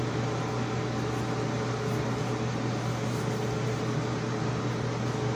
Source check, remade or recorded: recorded